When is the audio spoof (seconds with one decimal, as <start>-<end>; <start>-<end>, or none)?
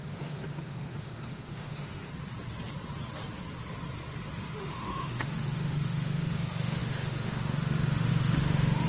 0.0-2.1; 4.6-8.9